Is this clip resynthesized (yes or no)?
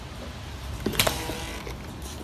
no